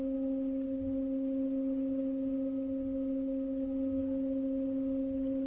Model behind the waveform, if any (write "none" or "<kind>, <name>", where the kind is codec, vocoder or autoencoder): none